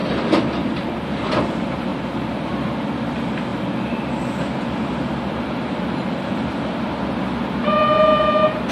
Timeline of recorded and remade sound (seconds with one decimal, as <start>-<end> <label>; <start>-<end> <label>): 0.0-8.7 recorded